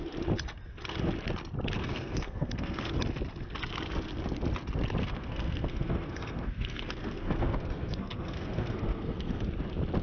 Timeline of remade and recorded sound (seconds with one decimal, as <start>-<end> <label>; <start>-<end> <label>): 0.0-1.8 recorded; 1.8-2.9 remade; 2.9-5.0 recorded; 5.0-9.4 remade; 9.4-10.0 recorded